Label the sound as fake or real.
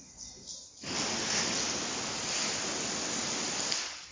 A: real